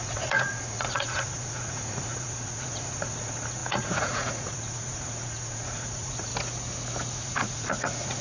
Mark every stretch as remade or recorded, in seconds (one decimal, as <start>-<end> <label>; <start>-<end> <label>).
0.0-6.3 remade; 6.3-7.1 recorded; 7.1-8.2 remade